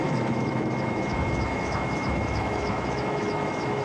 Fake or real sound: fake